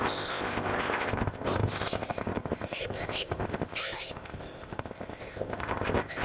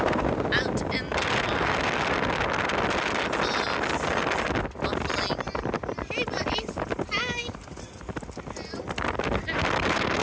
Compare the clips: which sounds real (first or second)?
second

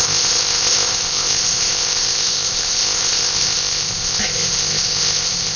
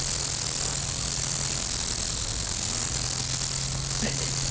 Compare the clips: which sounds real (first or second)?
second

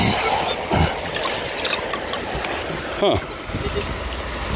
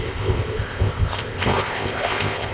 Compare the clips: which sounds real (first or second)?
first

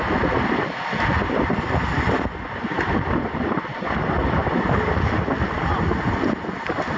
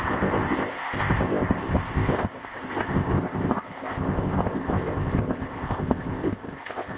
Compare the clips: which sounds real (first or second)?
first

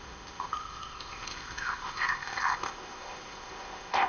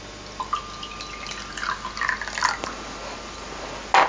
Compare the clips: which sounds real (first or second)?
second